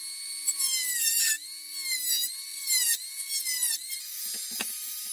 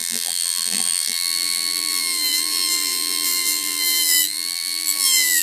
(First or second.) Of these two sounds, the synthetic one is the second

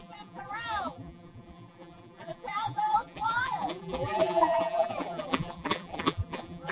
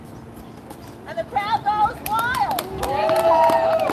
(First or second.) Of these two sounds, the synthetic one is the first